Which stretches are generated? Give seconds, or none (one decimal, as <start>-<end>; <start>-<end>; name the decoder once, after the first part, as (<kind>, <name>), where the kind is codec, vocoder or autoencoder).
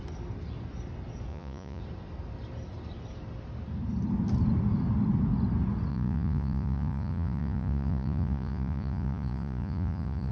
1.3-1.8 (vocoder, Vocos); 5.9-10.3